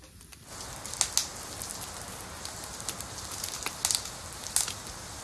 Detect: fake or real real